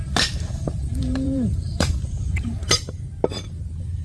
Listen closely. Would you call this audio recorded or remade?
remade